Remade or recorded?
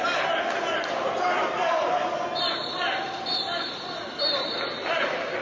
recorded